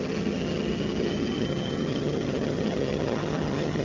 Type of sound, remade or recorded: remade